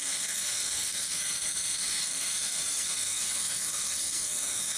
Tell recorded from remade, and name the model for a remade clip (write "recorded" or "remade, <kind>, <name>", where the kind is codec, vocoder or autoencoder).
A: remade, codec, SNAC